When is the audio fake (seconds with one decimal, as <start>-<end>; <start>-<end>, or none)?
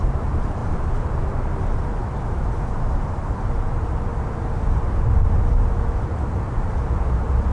0.0-2.0; 3.1-4.1; 6.3-7.5